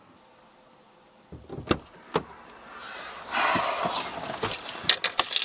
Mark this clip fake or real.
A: real